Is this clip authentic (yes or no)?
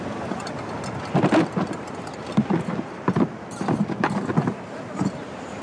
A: yes